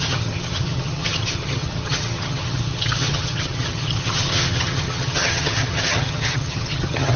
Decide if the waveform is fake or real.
fake